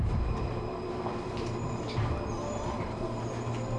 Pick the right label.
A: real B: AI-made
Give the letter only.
B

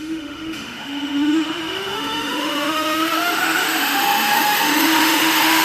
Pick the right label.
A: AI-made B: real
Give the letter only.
A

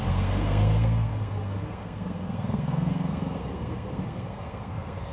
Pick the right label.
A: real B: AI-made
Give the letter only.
B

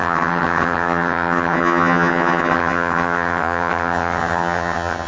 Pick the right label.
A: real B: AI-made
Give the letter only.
B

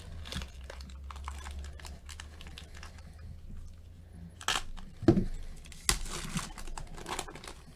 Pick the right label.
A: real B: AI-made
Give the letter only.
A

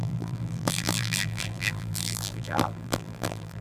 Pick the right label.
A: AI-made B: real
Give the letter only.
A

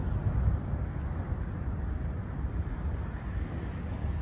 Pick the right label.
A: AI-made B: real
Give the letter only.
B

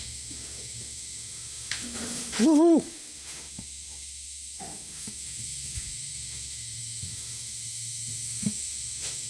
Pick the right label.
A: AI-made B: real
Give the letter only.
A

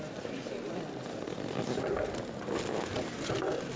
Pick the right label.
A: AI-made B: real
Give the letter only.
B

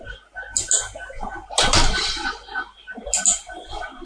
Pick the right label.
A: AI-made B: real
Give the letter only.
B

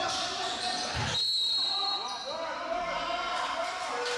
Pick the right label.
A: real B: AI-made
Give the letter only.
A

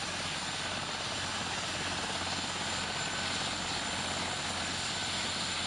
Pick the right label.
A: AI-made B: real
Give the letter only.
B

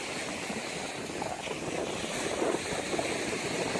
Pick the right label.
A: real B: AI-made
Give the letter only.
A